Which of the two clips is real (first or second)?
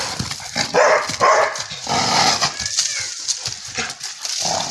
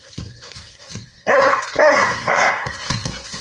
first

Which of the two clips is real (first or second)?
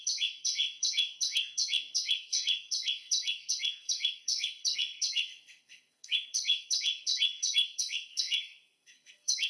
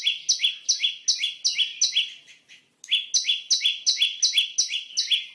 second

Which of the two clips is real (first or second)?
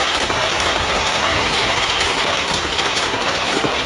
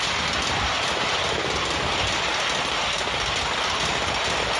second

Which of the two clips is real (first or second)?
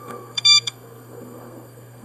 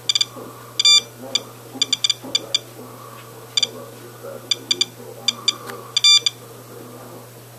second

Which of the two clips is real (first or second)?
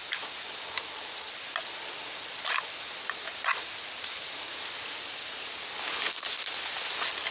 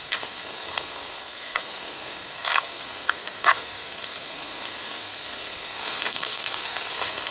first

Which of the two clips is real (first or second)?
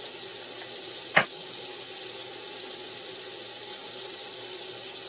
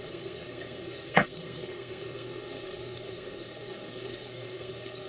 first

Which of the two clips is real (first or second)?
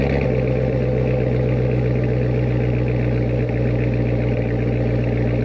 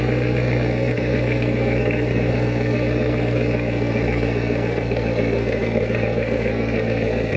first